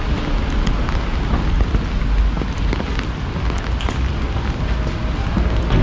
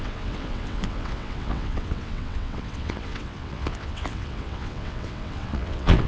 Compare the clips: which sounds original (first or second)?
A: first